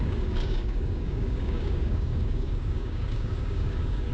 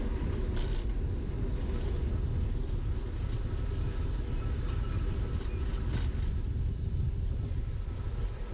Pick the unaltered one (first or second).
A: second